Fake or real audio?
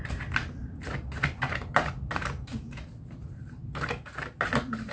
real